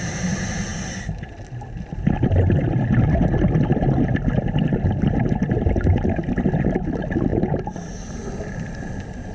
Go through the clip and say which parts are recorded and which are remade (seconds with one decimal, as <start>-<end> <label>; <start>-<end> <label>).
0.0-9.3 recorded